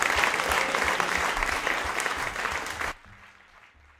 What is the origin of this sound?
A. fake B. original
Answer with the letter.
B